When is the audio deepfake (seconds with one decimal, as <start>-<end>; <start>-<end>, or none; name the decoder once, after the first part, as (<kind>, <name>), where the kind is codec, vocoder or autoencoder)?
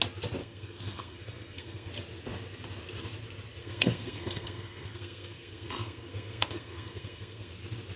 0.4-1.9 (codec, SNAC); 3.6-7.5